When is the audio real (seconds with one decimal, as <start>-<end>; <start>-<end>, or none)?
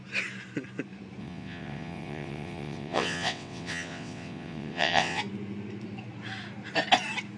0.0-1.2; 5.2-7.4